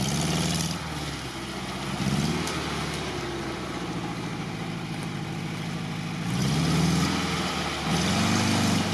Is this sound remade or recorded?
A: recorded